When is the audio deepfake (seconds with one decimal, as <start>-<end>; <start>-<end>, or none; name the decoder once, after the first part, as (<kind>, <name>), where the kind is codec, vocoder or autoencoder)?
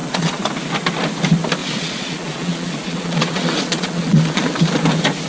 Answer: 0.0-0.5 (vocoder, Vocos); 1.6-4.6